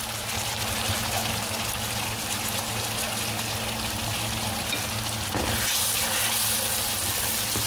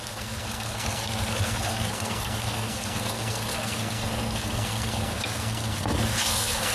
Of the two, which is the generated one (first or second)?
second